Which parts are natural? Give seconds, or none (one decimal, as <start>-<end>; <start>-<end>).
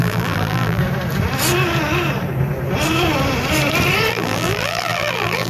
0.8-4.1